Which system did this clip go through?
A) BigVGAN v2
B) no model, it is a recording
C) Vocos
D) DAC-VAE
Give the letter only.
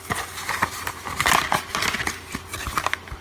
B